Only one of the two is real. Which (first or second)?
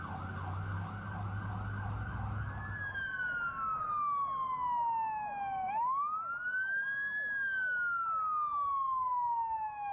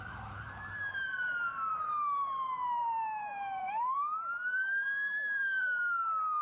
first